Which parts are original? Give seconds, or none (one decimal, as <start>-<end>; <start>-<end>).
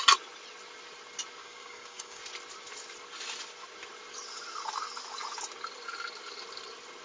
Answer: 0.0-1.4; 2.2-7.0